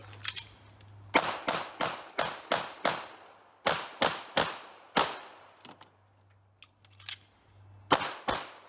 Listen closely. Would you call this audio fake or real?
real